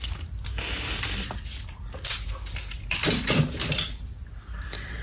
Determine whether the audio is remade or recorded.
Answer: recorded